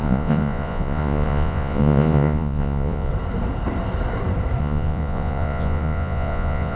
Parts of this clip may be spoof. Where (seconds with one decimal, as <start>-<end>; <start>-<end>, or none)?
0.0-3.1; 4.6-6.8